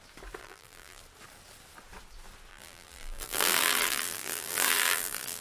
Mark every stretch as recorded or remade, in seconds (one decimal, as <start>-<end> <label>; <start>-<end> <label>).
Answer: 0.0-0.4 recorded; 0.4-1.0 remade; 1.0-2.5 recorded; 2.5-5.4 remade